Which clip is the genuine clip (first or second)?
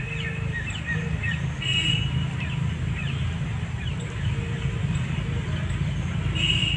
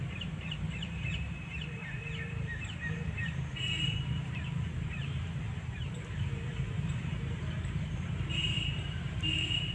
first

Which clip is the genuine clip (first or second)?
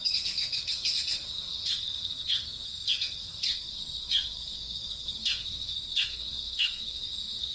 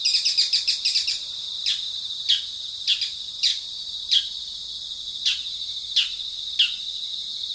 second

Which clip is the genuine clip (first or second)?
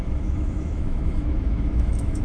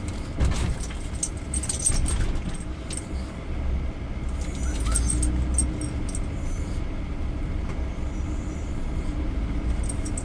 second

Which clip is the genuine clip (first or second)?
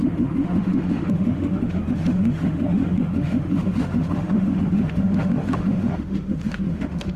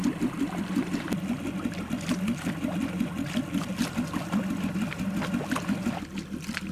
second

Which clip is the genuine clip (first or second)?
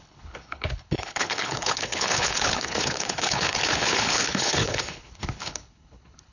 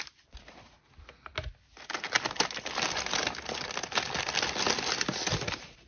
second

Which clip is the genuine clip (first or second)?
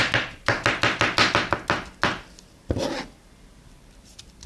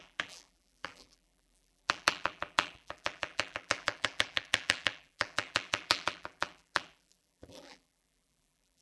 first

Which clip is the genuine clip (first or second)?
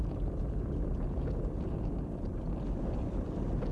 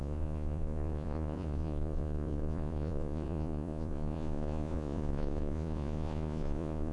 first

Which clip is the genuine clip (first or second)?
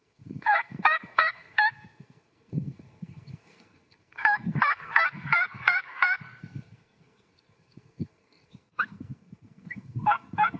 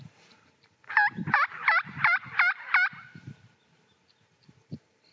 second